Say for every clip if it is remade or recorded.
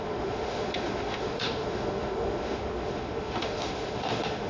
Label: remade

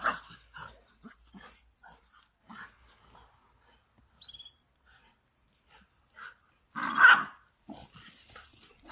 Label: recorded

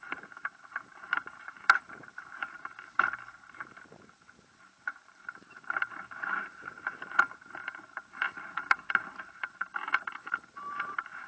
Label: remade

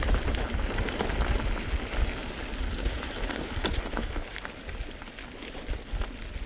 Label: recorded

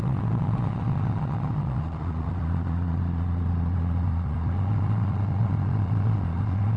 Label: remade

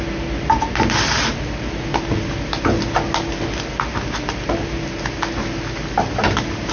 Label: recorded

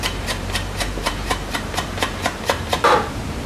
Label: remade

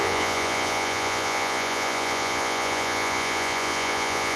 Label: remade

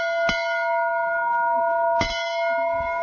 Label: recorded